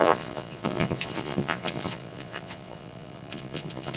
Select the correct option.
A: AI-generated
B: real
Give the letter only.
A